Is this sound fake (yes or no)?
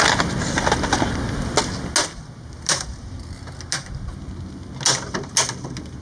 no